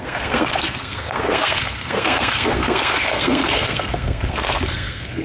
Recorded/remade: remade